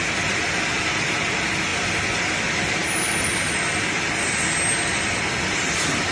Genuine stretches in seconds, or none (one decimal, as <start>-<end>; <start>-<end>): 0.0-1.7; 2.4-6.1